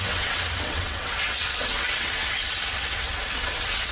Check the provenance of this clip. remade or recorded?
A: remade